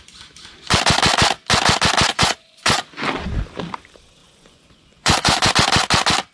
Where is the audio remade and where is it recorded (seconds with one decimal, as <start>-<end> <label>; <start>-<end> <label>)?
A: 0.0-2.1 recorded; 2.1-2.8 remade; 2.8-4.2 recorded; 4.2-5.5 remade; 5.5-6.3 recorded